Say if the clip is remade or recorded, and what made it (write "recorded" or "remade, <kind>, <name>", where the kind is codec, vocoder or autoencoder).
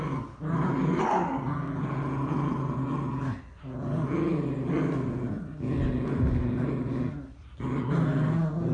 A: recorded